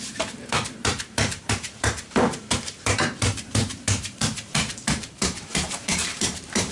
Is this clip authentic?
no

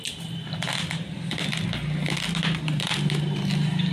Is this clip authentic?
yes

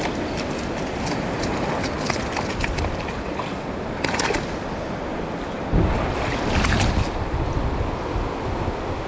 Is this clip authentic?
yes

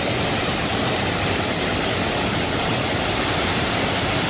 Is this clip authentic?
no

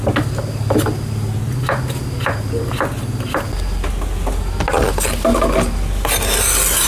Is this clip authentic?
yes